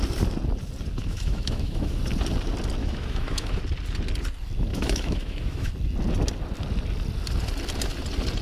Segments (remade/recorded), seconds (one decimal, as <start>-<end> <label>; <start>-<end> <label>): 0.0-1.0 recorded; 1.0-2.0 remade; 2.0-2.8 recorded; 2.8-3.6 remade; 3.6-4.7 recorded; 4.7-5.7 remade; 5.7-8.4 recorded